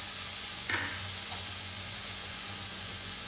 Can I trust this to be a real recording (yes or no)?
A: no